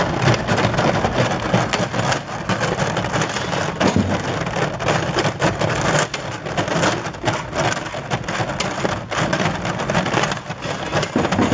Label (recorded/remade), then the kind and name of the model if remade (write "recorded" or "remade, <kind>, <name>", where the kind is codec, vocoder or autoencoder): recorded